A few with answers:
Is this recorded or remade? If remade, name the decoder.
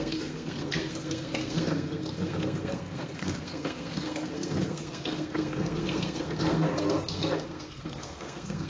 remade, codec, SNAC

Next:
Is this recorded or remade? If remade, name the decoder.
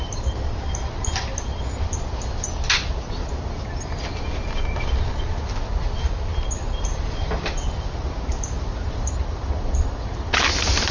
recorded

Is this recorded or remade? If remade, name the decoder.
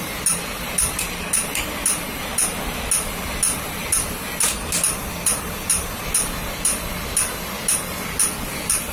recorded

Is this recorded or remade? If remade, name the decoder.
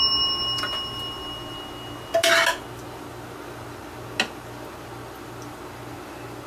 recorded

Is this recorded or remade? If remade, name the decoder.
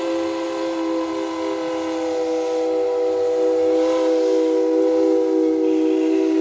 recorded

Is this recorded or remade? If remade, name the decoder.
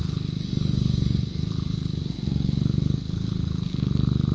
recorded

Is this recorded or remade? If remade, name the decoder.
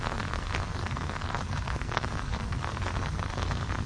remade, codec, SNAC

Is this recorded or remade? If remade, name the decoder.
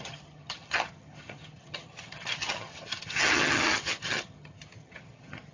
remade, vocoder, HiFi-GAN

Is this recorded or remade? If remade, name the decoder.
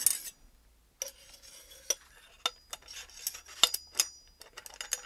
recorded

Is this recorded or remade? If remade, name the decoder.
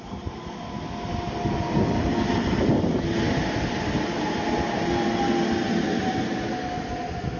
recorded